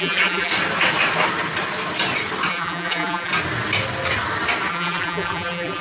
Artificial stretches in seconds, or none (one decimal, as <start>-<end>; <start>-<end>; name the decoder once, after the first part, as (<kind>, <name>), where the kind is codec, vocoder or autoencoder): 0.0-0.5 (vocoder, BigVGAN v2); 2.5-3.3; 4.7-5.8